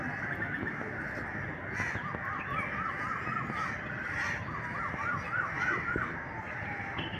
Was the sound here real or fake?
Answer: real